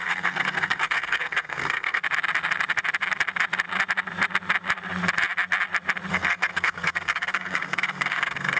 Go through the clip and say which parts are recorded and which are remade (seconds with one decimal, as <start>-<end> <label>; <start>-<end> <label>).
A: 0.0-2.0 remade; 2.0-6.1 recorded; 6.1-8.6 remade